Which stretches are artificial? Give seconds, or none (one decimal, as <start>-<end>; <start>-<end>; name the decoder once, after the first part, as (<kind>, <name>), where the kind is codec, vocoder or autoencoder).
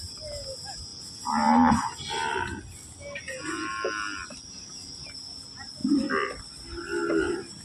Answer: 0.9-1.7 (vocoder, BigVGAN v2)